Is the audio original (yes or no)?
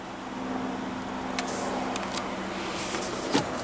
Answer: yes